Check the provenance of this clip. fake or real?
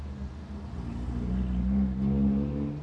real